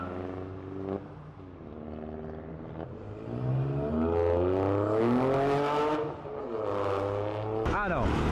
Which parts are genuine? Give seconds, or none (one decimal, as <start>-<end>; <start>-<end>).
0.0-8.3